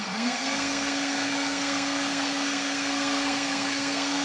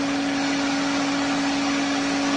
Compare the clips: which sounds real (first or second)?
second